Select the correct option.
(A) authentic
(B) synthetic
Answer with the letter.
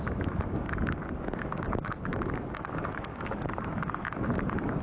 B